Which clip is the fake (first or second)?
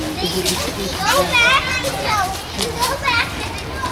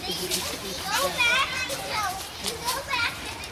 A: second